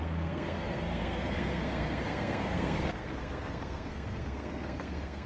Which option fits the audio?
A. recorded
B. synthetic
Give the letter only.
B